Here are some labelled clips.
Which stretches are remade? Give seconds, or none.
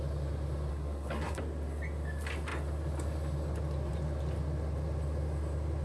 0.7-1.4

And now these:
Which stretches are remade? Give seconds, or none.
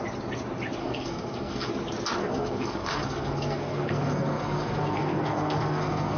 0.8-1.7; 2.2-6.2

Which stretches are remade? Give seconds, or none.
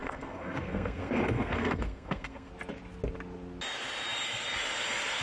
0.0-2.5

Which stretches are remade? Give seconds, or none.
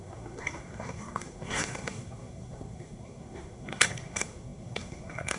0.0-5.4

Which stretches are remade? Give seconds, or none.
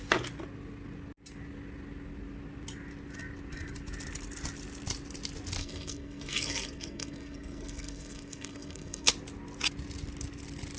5.6-9.1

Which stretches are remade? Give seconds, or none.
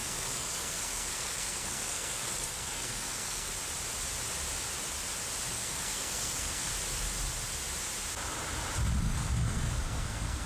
0.0-3.5; 5.5-6.7; 9.0-10.5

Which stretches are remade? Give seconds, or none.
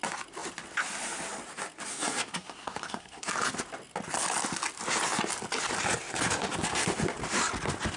1.9-3.3